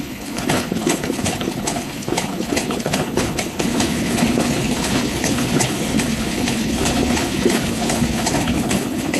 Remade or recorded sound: remade